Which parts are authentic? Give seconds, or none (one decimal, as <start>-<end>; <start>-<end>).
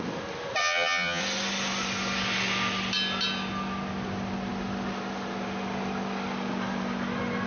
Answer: 0.0-0.6; 1.2-7.5